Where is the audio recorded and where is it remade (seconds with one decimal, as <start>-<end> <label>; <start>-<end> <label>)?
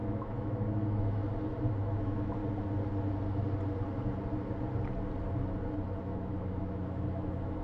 0.0-1.2 remade; 1.2-1.8 recorded; 1.8-2.4 remade; 2.4-6.0 recorded; 6.0-7.6 remade